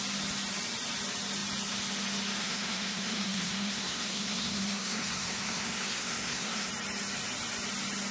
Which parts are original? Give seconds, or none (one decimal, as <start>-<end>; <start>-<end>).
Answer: 0.0-2.4; 6.7-8.1